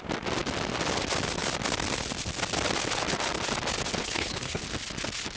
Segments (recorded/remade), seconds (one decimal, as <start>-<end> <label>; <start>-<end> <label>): 0.0-4.0 recorded; 4.0-4.6 remade; 4.6-5.4 recorded